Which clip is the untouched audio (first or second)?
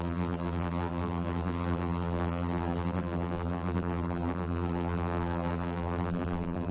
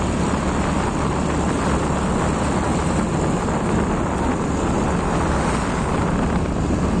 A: second